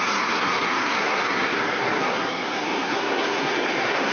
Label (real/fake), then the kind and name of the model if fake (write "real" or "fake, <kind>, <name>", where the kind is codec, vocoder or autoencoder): fake, codec, SNAC